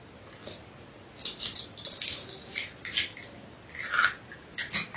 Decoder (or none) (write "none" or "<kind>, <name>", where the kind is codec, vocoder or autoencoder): none